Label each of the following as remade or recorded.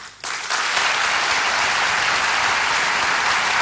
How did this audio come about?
recorded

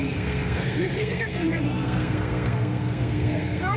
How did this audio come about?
remade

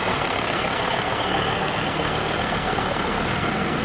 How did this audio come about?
remade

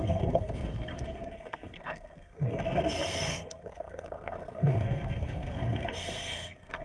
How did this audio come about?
remade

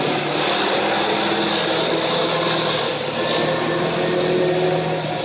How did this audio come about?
recorded